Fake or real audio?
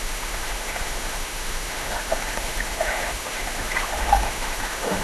fake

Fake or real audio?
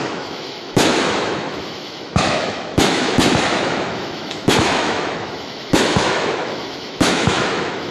fake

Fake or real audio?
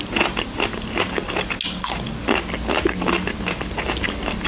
real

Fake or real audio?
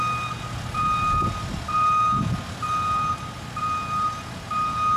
real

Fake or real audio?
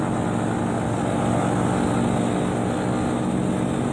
real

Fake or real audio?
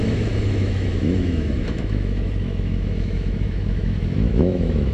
fake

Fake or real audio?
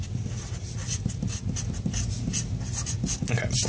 real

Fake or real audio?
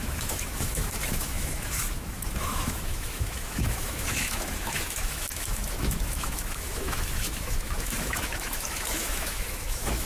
fake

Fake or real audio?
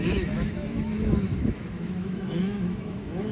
fake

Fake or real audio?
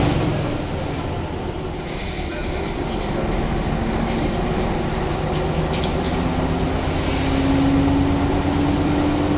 real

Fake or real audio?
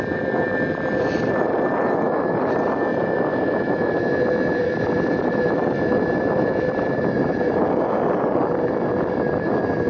real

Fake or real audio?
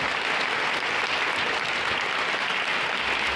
real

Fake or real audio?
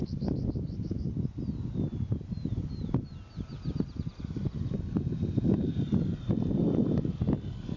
real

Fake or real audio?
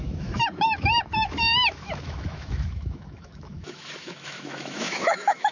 fake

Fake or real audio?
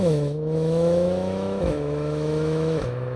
fake